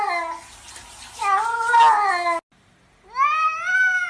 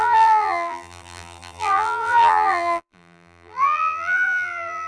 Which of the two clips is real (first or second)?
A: first